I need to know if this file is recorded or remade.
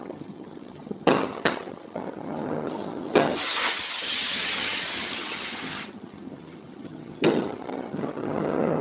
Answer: remade